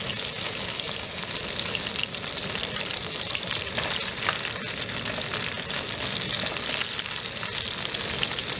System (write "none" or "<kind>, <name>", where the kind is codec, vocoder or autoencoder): none